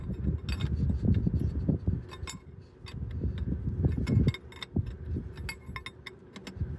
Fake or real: real